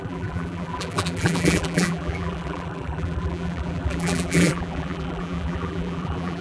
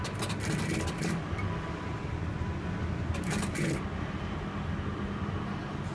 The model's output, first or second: first